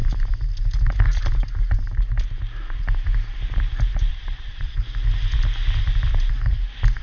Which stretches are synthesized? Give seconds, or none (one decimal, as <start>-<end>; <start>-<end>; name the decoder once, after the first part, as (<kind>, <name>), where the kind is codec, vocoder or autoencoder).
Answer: 4.1-4.8 (vocoder, Vocos)